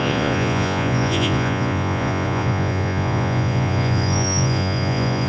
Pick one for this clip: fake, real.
fake